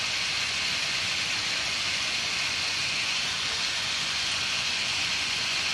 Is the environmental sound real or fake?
fake